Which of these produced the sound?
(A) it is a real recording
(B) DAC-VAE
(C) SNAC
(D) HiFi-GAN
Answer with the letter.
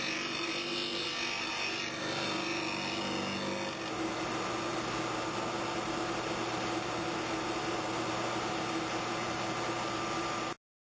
A